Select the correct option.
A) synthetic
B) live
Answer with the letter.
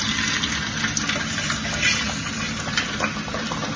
B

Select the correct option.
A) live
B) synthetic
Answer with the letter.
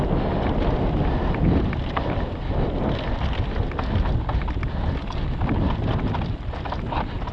A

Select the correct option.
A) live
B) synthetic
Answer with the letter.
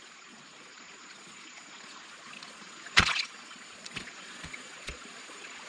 B